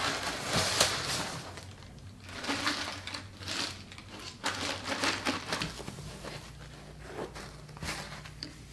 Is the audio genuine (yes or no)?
yes